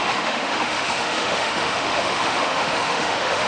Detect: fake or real fake